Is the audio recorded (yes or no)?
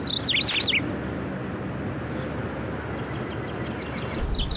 yes